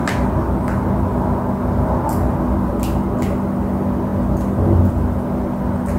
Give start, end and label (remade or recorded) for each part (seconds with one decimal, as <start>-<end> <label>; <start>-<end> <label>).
0.0-6.0 recorded